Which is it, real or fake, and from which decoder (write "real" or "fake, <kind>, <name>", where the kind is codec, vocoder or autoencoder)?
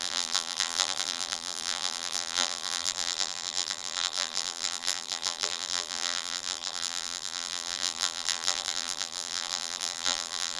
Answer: fake, vocoder, BigVGAN v2